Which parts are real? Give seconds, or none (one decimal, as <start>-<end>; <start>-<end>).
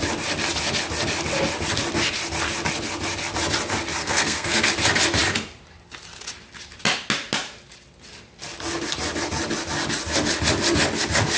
0.0-4.0; 4.7-11.4